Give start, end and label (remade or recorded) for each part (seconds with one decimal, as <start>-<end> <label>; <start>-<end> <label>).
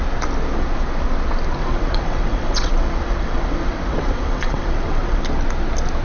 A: 0.0-1.6 recorded; 1.6-5.2 remade; 5.2-6.0 recorded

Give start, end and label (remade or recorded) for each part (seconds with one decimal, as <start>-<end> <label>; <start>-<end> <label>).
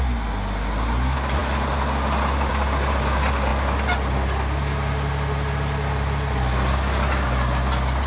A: 0.0-8.1 recorded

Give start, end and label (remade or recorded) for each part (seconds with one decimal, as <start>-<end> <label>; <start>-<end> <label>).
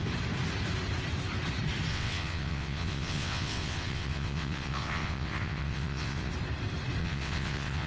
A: 0.0-1.9 recorded; 1.9-6.3 remade; 6.3-7.0 recorded; 7.0-7.9 remade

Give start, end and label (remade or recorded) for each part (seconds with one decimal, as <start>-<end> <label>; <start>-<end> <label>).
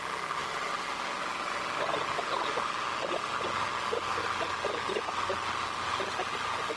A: 0.0-6.8 recorded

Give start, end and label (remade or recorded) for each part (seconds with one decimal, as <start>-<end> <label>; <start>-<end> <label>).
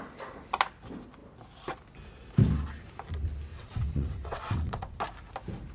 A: 0.0-3.5 recorded; 3.5-5.0 remade; 5.0-5.7 recorded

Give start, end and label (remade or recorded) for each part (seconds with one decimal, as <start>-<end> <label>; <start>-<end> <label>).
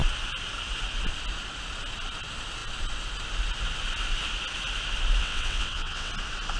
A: 0.0-5.2 recorded; 5.2-6.1 remade; 6.1-6.6 recorded